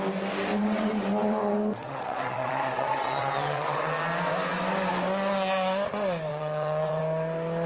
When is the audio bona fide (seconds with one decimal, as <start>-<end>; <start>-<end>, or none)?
0.0-0.5; 3.9-6.3; 7.0-7.7